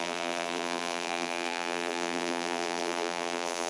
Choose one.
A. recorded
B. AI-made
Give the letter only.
B